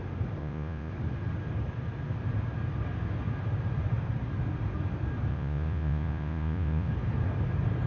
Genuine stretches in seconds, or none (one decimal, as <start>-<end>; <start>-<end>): 0.0-0.4; 0.9-5.3; 6.9-7.9